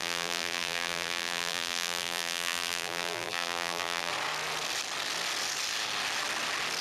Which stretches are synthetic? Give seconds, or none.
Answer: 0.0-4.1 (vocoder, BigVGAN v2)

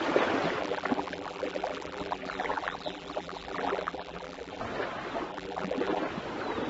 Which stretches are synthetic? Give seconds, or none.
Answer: 0.6-4.6 (vocoder, BigVGAN v2); 5.3-6.0